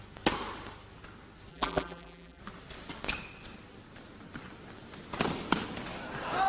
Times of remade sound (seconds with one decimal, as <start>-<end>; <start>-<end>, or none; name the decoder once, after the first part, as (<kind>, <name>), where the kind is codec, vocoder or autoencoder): 1.5-2.4 (vocoder, BigVGAN v2)